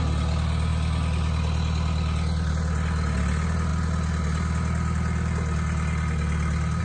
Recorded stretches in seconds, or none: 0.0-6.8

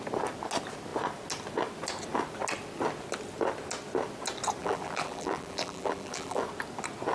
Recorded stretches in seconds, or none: 0.0-4.6; 6.4-7.1

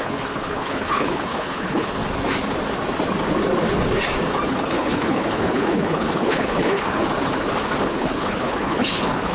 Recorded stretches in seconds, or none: 2.0-4.5; 7.0-7.8

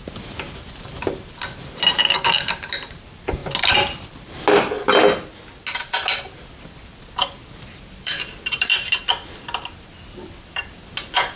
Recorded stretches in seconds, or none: 0.0-7.4; 9.0-11.4

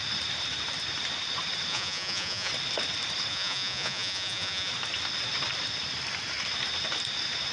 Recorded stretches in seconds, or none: 0.0-1.7; 2.5-3.3; 4.7-7.5

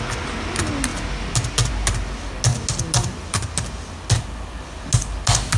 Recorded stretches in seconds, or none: 0.0-5.6

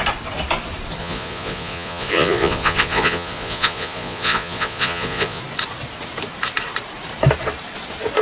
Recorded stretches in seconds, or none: 0.0-1.0; 5.4-8.2